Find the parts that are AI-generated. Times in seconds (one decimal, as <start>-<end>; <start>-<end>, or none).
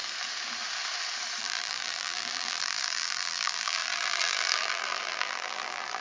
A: 1.4-6.0